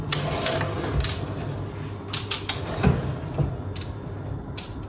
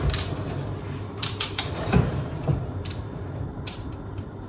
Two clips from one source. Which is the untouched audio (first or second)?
first